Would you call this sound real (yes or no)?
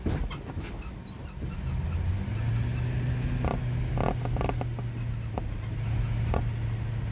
yes